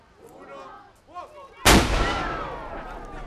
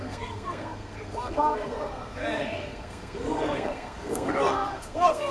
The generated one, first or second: second